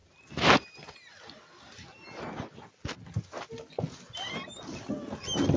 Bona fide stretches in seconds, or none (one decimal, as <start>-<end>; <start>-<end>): 0.0-5.6